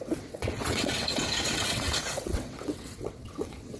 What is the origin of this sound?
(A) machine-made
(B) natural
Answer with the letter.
A